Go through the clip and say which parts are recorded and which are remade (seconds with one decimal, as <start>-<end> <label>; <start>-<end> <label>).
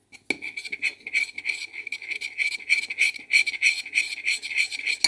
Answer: 0.0-5.1 recorded